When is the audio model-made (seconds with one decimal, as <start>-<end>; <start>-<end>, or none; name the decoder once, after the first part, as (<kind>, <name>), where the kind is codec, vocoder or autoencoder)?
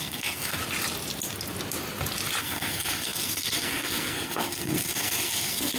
0.0-0.6 (codec, SNAC); 2.4-5.8